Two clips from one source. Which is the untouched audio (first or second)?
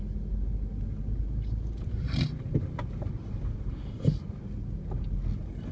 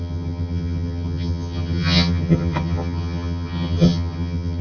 first